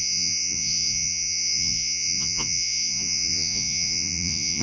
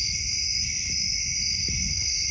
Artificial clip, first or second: first